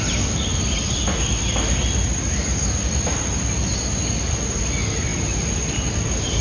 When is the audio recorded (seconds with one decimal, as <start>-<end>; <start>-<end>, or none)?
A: 0.0-6.4